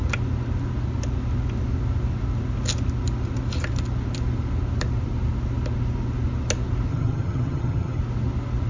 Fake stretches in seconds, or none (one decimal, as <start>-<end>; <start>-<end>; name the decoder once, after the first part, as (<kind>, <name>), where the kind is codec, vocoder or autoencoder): 6.9-8.0 (vocoder, HiFi-GAN)